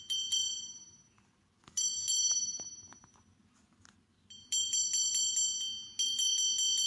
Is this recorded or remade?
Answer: recorded